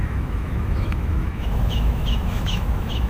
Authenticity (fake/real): fake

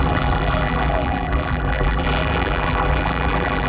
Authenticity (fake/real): fake